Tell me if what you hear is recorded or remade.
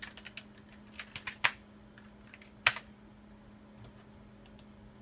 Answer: recorded